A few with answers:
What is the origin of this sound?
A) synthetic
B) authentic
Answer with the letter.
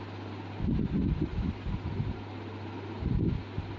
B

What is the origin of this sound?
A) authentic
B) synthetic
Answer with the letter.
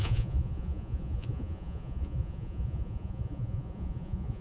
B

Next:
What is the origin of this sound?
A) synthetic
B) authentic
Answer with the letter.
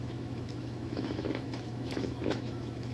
A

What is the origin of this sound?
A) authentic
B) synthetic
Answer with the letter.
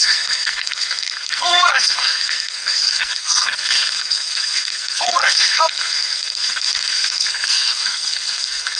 B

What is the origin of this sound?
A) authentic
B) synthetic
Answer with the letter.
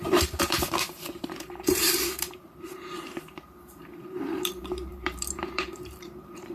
B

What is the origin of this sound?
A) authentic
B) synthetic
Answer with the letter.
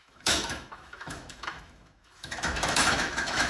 B